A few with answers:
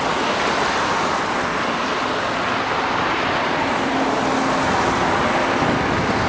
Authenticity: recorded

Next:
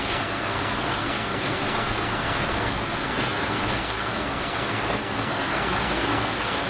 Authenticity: remade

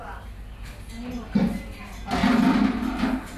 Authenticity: recorded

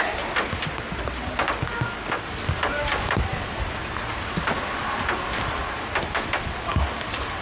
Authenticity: recorded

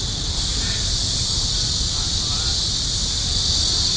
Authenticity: recorded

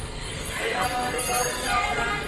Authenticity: remade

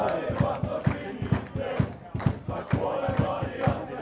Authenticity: recorded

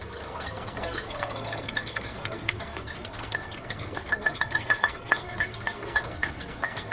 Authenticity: remade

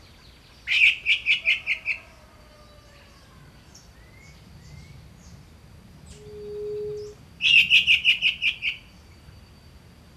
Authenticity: recorded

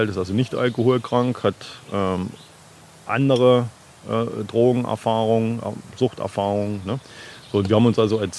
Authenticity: recorded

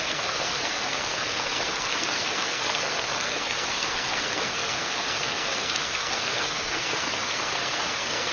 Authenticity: remade